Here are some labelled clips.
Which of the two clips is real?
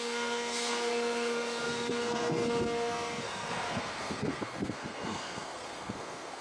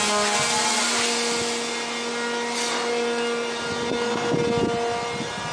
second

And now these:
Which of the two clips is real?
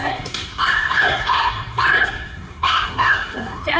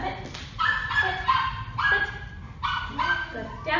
second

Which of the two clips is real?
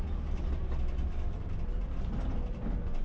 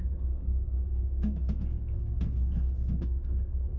first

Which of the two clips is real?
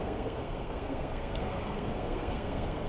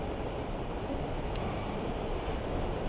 second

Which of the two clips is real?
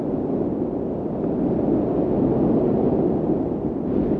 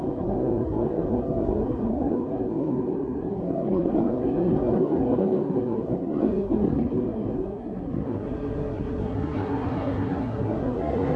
first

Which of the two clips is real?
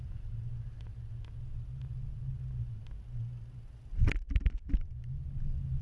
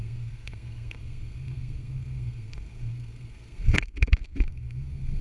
first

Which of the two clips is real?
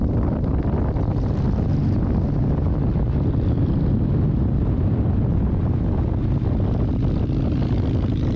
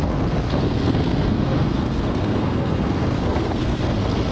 first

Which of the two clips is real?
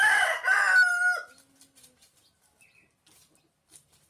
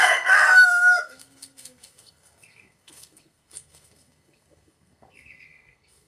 first